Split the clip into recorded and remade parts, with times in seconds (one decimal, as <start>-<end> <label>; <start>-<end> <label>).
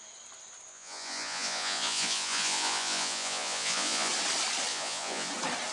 0.0-0.7 recorded; 0.7-4.1 remade; 4.1-4.7 recorded; 4.7-5.3 remade; 5.3-5.7 recorded